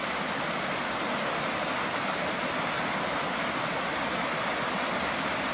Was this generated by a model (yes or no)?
no